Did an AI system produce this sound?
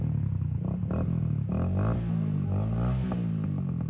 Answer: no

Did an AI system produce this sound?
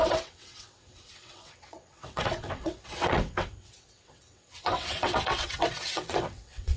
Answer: yes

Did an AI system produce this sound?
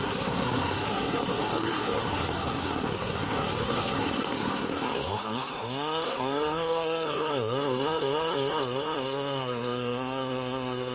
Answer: yes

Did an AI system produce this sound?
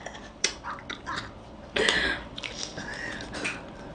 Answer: yes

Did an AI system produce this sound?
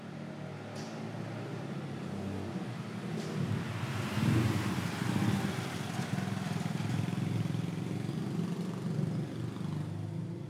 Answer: no